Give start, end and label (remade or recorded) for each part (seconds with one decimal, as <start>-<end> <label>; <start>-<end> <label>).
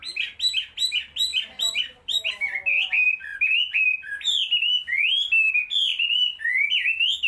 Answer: 0.0-1.3 recorded; 1.3-2.3 remade; 2.3-7.3 recorded